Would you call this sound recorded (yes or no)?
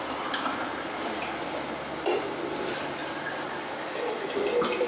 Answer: yes